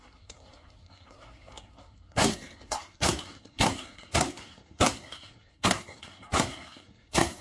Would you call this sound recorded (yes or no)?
no